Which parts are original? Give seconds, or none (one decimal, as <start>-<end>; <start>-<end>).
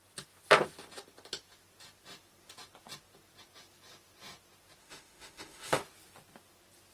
0.0-4.8; 5.8-6.9